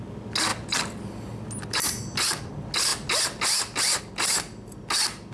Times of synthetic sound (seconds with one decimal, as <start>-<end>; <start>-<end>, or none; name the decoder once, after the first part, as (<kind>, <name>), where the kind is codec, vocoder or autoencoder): none